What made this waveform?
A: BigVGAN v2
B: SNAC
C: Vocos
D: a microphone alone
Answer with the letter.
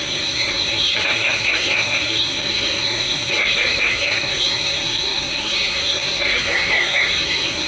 B